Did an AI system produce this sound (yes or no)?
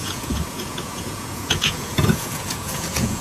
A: yes